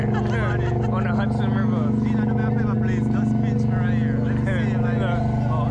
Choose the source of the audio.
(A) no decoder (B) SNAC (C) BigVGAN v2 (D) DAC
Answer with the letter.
A